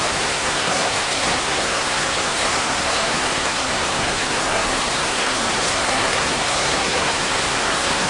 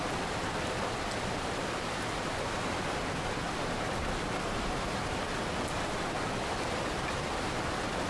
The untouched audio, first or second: second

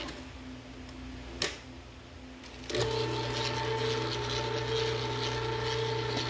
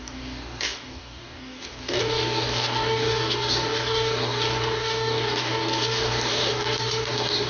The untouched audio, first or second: first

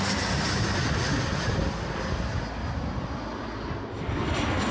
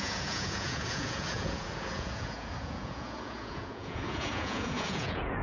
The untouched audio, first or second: first